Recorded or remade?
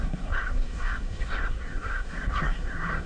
remade